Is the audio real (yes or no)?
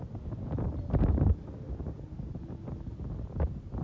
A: yes